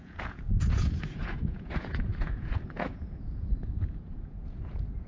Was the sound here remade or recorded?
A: remade